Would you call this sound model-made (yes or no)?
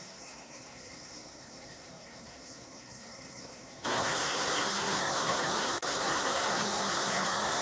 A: yes